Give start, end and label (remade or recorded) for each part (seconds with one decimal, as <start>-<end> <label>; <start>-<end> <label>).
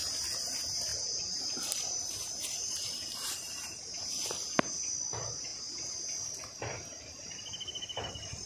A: 0.0-0.9 recorded; 0.9-4.1 remade; 4.1-8.5 recorded